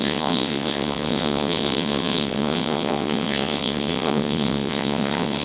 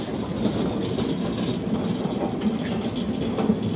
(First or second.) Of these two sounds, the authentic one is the second